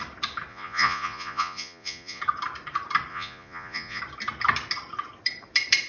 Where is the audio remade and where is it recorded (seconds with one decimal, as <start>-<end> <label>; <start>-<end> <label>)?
0.0-0.5 recorded; 0.5-2.2 remade; 2.2-3.1 recorded; 3.1-4.0 remade; 4.0-5.9 recorded